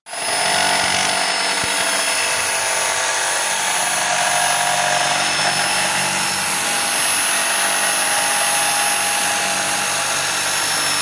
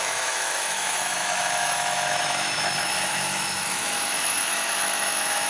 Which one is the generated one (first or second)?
second